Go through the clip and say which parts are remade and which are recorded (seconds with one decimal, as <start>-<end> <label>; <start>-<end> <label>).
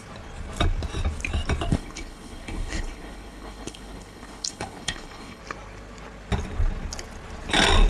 0.0-1.7 recorded; 1.7-5.4 remade; 5.4-7.9 recorded